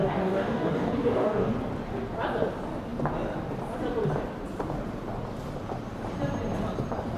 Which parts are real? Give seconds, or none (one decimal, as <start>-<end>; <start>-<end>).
1.5-7.2